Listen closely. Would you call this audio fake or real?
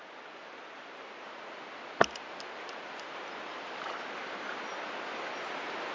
real